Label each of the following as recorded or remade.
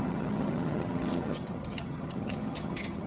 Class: remade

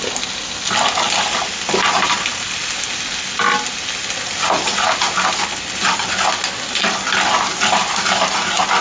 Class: recorded